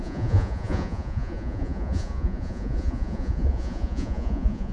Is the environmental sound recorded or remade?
remade